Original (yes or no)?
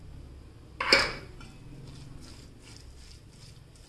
yes